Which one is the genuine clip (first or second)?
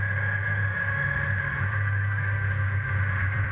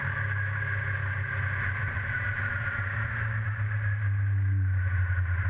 second